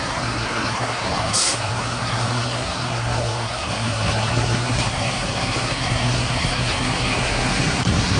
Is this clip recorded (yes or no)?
no